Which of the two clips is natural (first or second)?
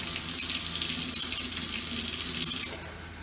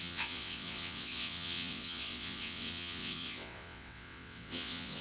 first